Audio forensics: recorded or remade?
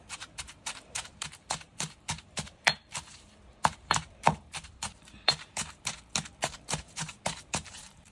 remade